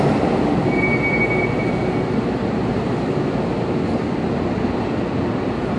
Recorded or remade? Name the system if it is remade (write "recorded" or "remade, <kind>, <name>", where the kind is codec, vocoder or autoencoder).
recorded